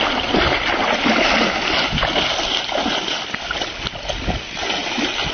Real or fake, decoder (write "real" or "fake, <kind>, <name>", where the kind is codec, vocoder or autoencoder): real